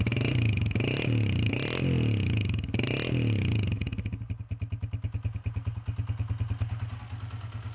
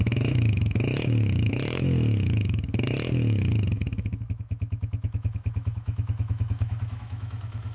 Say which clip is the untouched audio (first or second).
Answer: first